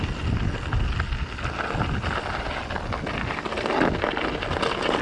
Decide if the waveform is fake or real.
real